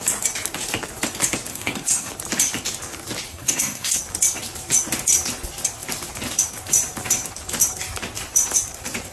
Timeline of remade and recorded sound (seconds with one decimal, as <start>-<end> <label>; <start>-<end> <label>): 0.0-1.5 recorded; 1.5-2.1 remade; 2.1-3.3 recorded; 3.3-4.0 remade; 4.0-9.1 recorded